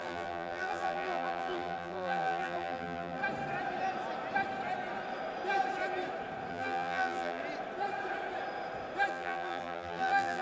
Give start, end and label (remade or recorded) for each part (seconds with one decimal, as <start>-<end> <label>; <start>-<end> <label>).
0.0-3.2 remade; 3.2-6.5 recorded; 6.5-7.4 remade; 7.4-9.1 recorded; 9.1-10.4 remade